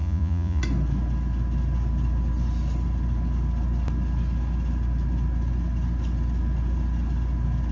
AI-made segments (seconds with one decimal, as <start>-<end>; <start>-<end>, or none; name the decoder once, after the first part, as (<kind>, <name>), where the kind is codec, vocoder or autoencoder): 0.0-0.6 (vocoder, Vocos)